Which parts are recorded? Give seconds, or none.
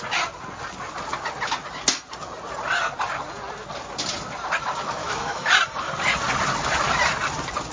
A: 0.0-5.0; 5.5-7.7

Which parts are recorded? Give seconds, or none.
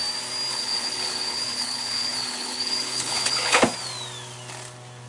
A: 0.0-0.5; 3.6-5.1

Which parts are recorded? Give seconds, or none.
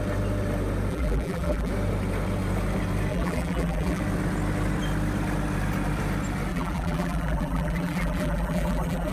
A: 0.0-0.9; 1.7-3.1; 4.0-6.5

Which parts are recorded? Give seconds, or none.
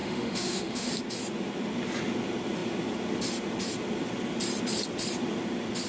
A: 0.9-5.9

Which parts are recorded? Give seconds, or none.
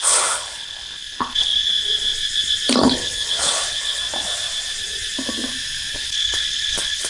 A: 1.7-2.8; 4.0-5.9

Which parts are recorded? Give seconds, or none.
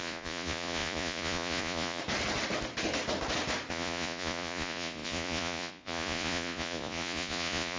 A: 2.0-3.7